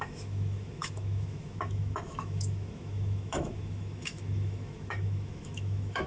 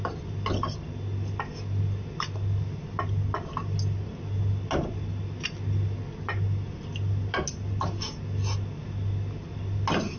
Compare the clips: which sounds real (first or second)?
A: second